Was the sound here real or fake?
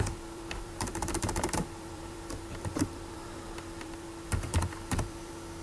fake